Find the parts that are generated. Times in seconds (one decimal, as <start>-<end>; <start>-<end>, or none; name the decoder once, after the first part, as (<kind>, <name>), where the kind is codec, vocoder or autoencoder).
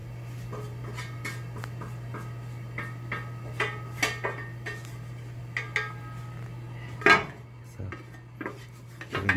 none